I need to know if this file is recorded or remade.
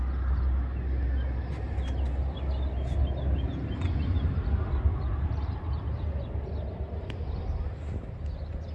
recorded